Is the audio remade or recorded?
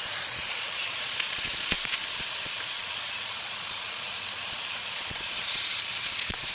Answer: remade